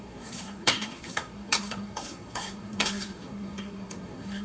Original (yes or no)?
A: no